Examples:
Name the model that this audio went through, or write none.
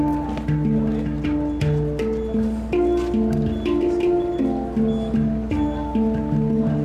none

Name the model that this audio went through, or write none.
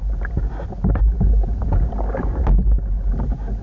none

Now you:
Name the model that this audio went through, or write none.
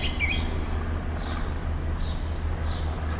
none